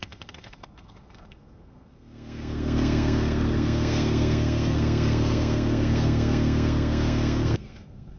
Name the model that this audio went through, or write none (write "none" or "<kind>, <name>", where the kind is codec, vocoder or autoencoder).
codec, SNAC